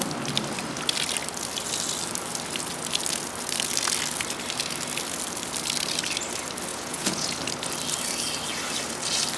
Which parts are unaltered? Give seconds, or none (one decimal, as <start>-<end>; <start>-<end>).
0.0-6.7; 7.4-9.4